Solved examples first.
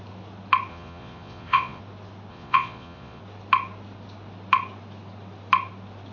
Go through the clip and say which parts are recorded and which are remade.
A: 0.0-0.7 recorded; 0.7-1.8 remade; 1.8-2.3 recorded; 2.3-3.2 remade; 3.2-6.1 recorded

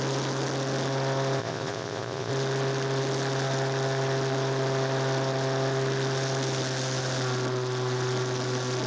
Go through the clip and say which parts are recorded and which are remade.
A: 0.0-1.4 recorded; 1.4-2.3 remade; 2.3-8.9 recorded

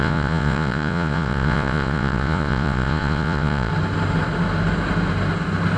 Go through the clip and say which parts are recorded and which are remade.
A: 0.0-3.7 remade; 3.7-5.8 recorded

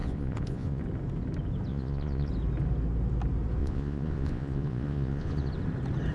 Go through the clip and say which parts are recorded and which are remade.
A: 0.0-0.8 remade; 0.8-1.7 recorded; 1.7-2.3 remade; 2.3-3.6 recorded; 3.6-5.5 remade; 5.5-6.1 recorded

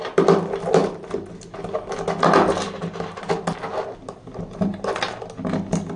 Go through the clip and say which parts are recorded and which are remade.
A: 0.0-6.0 recorded

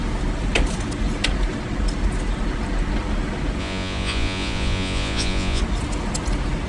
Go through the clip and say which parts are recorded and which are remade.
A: 0.0-3.6 recorded; 3.6-5.6 remade; 5.6-6.7 recorded